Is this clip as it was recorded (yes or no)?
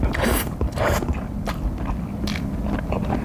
yes